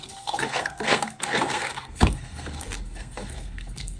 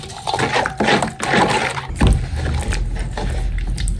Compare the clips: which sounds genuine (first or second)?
second